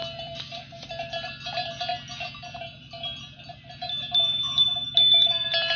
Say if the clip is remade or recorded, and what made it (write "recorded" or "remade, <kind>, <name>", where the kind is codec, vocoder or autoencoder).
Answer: recorded